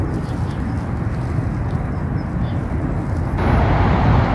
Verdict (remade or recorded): recorded